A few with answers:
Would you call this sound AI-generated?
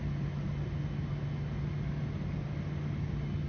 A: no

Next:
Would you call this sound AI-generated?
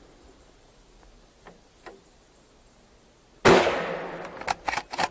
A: no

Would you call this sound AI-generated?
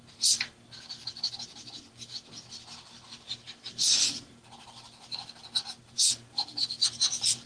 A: no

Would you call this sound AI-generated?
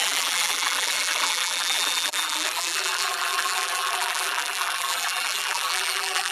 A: yes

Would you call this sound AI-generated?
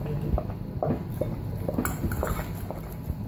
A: no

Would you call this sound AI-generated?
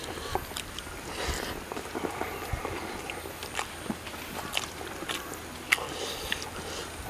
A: no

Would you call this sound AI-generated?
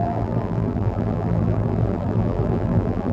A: yes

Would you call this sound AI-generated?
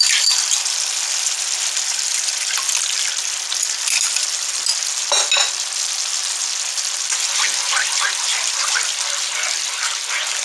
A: no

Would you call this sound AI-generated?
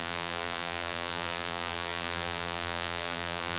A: yes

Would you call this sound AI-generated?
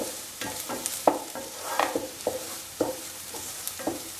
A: yes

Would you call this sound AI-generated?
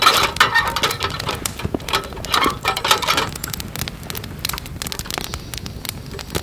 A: no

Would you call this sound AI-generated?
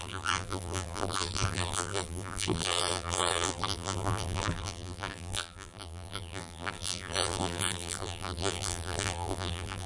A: yes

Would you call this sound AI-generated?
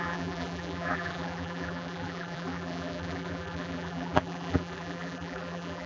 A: yes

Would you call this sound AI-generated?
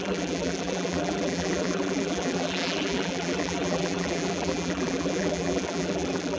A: yes